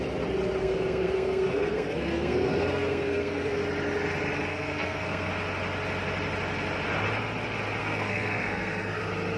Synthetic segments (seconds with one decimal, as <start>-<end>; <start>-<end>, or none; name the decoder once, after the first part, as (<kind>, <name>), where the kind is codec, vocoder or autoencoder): 0.6-3.6 (codec, SNAC); 4.5-5.3; 7.8-9.0